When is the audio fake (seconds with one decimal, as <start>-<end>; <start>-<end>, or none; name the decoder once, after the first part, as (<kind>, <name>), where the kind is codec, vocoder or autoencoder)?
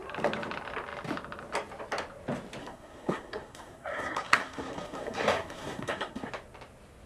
2.6-6.3 (codec, SNAC)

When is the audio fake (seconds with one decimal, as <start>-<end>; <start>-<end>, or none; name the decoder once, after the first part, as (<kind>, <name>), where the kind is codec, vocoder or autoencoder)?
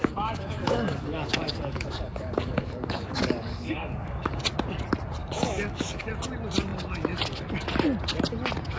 0.0-4.4 (codec, DAC); 5.2-6.1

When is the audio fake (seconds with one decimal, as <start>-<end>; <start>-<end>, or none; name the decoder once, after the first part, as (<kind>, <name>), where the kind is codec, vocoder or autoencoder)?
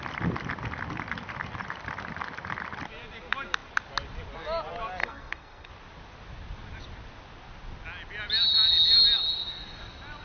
5.0-5.7 (codec, SNAC)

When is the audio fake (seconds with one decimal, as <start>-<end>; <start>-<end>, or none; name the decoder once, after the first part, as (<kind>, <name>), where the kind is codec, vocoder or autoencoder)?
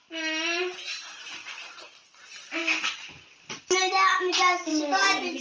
none